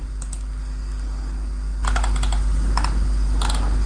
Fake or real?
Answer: real